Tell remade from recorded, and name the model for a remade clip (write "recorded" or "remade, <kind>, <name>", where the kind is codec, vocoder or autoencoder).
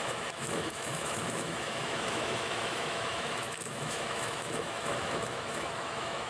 remade, autoencoder, DAC-VAE